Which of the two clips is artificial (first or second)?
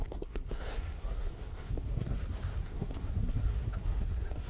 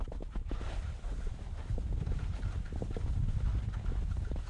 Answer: first